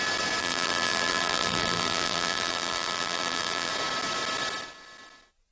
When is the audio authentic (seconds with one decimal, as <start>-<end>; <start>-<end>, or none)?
0.0-0.4; 3.7-5.5